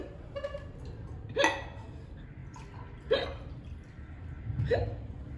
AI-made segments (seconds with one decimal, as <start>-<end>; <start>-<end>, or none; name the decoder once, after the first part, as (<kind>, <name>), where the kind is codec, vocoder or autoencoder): none